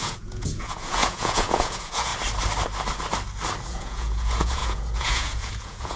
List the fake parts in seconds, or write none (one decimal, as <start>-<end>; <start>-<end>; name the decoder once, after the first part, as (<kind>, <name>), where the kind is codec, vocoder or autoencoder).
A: 0.0-2.1 (vocoder, Vocos); 3.7-6.0